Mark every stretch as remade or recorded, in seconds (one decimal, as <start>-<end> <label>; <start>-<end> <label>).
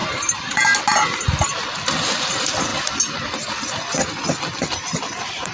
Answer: 0.0-0.6 remade; 0.6-5.5 recorded